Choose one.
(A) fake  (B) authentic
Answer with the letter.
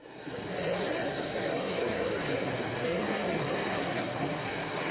A